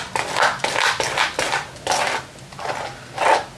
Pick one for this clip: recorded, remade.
recorded